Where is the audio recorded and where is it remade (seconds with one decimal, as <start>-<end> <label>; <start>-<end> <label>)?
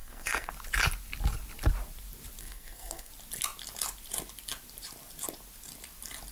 0.0-0.5 remade; 0.5-2.4 recorded; 2.4-3.1 remade; 3.1-6.3 recorded